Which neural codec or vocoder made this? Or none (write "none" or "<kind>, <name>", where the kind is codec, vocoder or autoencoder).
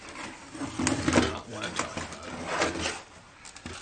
none